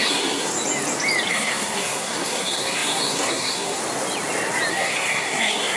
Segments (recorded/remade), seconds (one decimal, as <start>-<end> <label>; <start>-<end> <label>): 0.0-0.5 remade; 0.5-1.3 recorded; 1.3-3.8 remade; 3.8-4.7 recorded; 4.7-5.8 remade